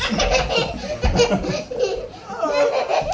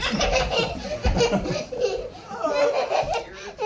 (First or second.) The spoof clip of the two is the second